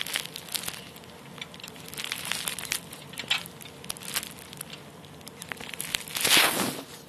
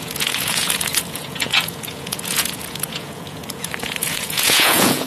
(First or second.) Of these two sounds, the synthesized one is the second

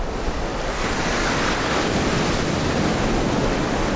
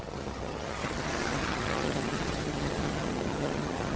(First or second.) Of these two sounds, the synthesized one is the second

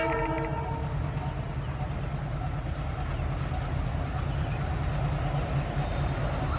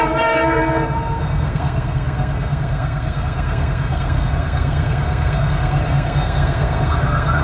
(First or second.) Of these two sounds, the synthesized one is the second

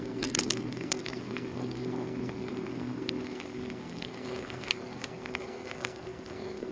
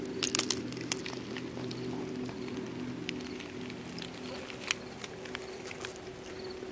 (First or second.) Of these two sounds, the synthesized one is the first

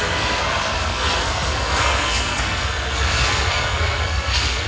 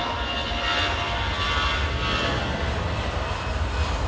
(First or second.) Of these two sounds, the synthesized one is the first